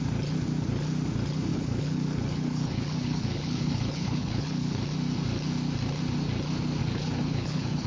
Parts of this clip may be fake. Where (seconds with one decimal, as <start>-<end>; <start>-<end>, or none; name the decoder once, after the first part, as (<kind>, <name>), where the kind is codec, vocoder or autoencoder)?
1.5-4.8 (codec, HILCodec); 6.8-7.9